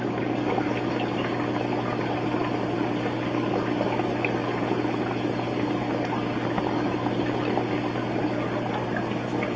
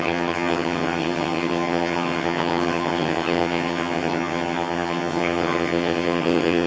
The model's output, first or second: second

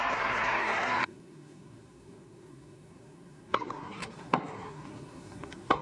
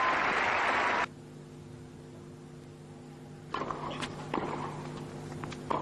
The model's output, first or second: first